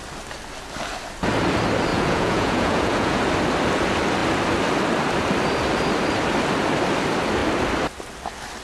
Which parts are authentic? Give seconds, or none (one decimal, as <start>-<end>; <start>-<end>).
0.0-1.9; 3.2-8.6